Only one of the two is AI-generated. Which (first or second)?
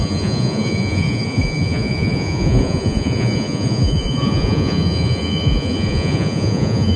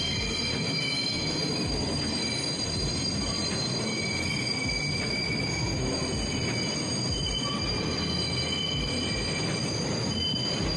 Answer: first